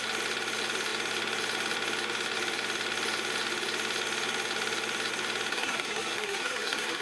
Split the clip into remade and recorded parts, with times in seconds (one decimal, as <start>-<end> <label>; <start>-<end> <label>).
0.0-5.5 recorded; 5.5-7.0 remade